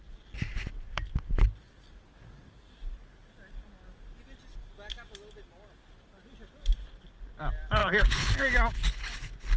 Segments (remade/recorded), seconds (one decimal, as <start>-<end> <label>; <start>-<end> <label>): 0.0-7.8 recorded; 7.8-8.4 remade; 8.4-9.6 recorded